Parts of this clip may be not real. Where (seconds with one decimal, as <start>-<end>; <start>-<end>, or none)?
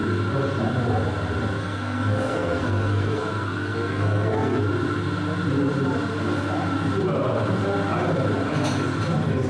1.6-4.6